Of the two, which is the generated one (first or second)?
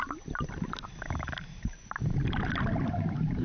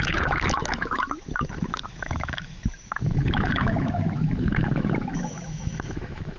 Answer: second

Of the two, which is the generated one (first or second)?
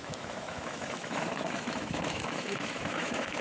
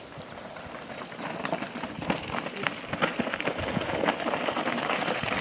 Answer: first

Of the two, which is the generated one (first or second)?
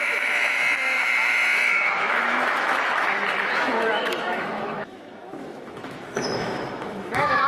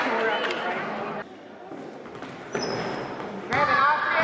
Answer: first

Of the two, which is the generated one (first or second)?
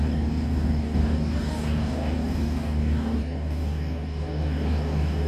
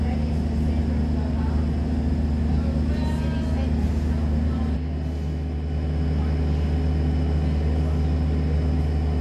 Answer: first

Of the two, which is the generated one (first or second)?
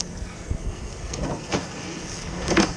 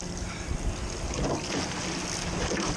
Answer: first